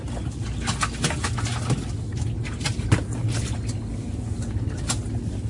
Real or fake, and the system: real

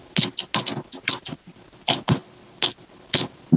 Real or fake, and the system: real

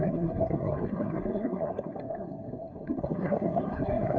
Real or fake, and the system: fake, codec, SNAC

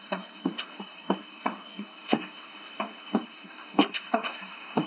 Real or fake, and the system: fake, codec, SNAC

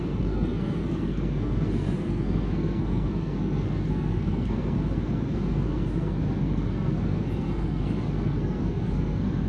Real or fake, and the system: fake, codec, SNAC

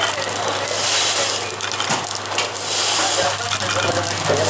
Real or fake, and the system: real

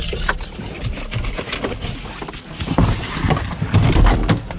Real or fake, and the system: real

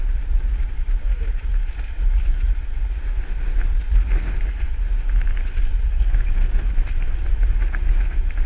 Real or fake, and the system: real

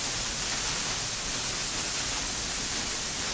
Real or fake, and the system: real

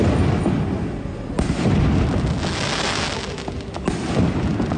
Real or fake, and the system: real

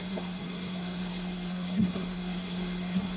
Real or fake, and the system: fake, codec, SNAC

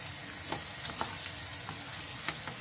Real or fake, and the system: real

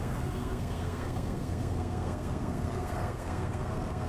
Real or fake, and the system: fake, codec, SNAC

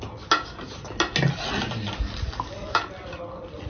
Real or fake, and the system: real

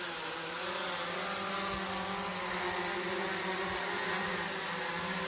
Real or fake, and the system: real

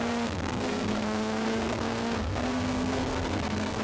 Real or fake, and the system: fake, codec, SNAC